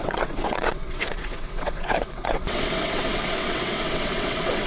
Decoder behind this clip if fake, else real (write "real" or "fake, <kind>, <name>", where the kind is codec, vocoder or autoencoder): fake, vocoder, WaveNeXt